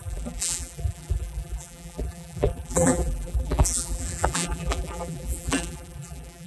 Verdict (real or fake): fake